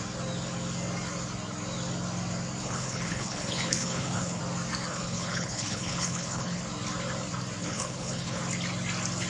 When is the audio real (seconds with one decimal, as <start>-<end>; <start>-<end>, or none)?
0.0-2.6; 4.4-4.9; 6.6-7.6; 8.4-9.3